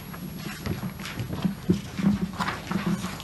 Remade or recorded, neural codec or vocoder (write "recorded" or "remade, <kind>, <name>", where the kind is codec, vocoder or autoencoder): recorded